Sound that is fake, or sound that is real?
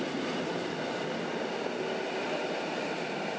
real